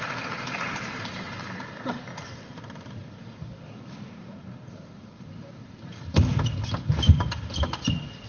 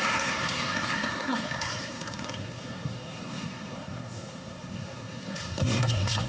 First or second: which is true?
first